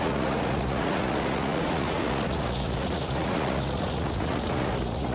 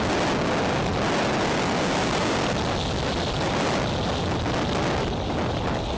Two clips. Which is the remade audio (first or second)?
first